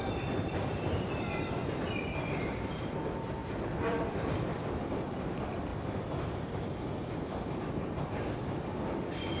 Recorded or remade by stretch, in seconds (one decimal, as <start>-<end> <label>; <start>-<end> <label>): 0.0-5.7 remade; 5.7-9.0 recorded; 9.0-9.4 remade